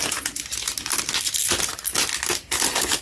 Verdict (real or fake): real